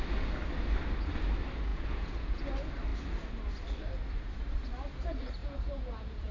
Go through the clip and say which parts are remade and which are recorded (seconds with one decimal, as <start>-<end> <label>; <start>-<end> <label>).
0.0-1.7 recorded; 1.7-2.4 remade; 2.4-5.4 recorded; 5.4-6.3 remade